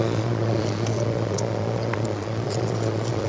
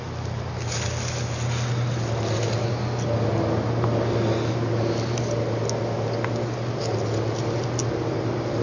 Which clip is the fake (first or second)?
first